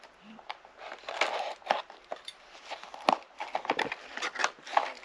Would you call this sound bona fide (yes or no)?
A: no